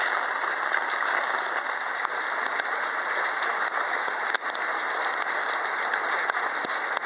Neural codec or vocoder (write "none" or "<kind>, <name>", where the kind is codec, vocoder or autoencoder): none